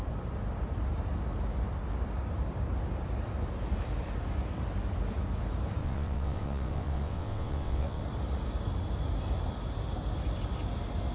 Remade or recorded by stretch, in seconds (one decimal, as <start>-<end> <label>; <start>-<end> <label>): 0.0-5.8 recorded; 5.8-8.0 remade; 8.0-11.1 recorded